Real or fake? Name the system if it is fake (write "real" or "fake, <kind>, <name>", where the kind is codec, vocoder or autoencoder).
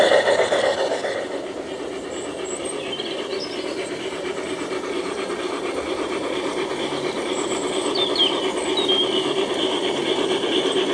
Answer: fake, vocoder, BigVGAN v2